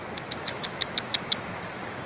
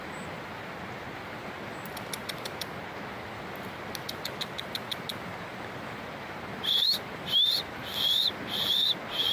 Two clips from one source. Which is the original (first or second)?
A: second